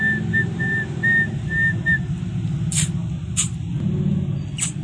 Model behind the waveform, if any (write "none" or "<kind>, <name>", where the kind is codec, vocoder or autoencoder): none